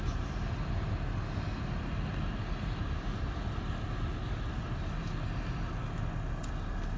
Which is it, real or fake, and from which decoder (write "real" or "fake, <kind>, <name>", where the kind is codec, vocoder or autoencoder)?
real